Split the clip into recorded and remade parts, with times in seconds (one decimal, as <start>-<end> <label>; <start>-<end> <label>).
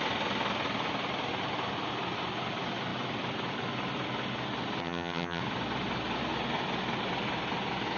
0.0-4.8 recorded; 4.8-5.4 remade; 5.4-8.0 recorded